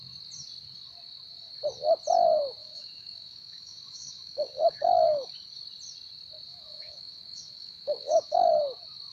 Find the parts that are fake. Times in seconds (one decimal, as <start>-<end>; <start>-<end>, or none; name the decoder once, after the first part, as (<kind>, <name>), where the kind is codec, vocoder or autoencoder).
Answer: 2.6-5.3 (autoencoder, DAC-VAE); 6.5-8.5